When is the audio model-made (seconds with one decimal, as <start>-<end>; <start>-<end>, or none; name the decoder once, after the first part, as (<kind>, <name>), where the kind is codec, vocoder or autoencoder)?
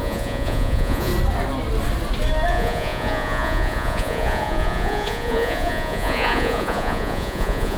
0.0-1.1 (vocoder, Vocos); 2.5-7.8